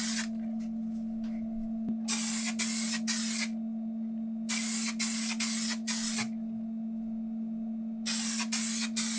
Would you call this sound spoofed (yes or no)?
no